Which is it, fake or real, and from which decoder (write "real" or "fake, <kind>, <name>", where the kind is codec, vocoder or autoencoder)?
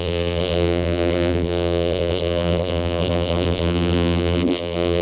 fake, vocoder, BigVGAN v2